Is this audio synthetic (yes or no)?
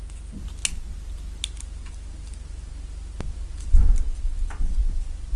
no